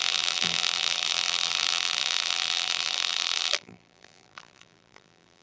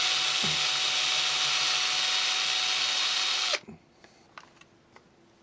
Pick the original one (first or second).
second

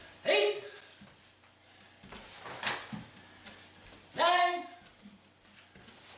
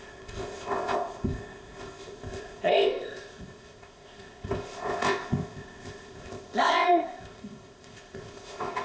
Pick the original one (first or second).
first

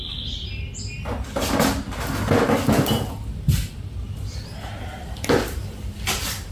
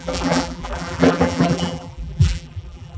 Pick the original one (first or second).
first